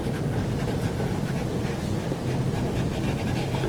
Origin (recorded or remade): recorded